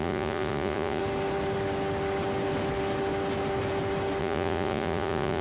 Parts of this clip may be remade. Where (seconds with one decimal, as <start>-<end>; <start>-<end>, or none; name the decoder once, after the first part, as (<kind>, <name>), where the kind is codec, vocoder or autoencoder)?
0.0-1.0 (vocoder, Vocos); 4.2-5.4